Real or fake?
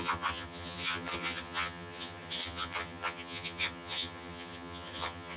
fake